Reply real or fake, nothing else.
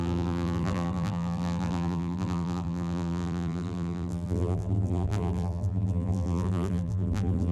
fake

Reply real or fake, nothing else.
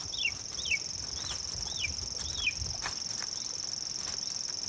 real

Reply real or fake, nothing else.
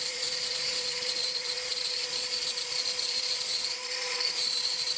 fake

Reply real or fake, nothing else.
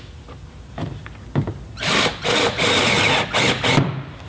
real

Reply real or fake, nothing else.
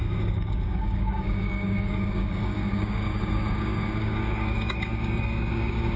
fake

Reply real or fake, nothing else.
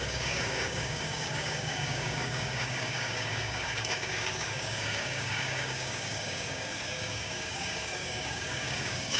fake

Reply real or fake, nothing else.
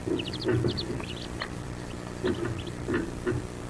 real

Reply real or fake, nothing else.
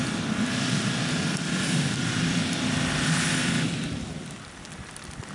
real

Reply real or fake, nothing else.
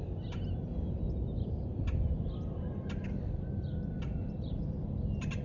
real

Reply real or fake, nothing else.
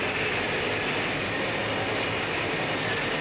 real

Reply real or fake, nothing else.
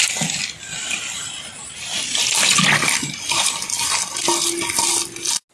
real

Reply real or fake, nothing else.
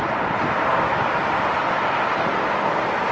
real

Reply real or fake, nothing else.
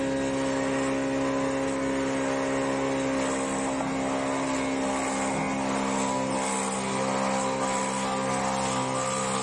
real